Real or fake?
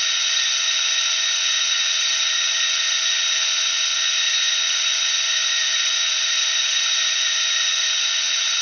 fake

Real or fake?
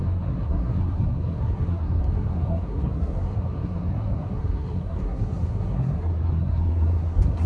fake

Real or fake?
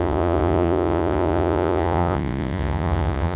fake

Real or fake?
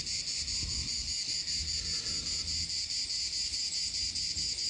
real